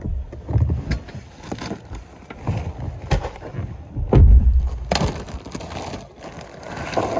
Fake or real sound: real